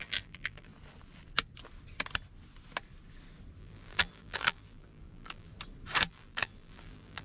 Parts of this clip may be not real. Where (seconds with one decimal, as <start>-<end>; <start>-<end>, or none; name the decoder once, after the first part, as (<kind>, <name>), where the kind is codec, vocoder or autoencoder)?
0.0-0.7 (vocoder, BigVGAN v2); 3.6-5.5; 6.1-7.2